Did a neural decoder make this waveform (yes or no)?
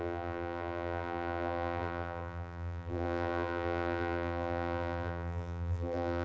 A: yes